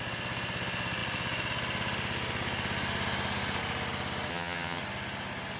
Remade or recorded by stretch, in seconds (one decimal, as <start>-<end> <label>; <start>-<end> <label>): 0.0-4.3 recorded; 4.3-4.8 remade; 4.8-5.6 recorded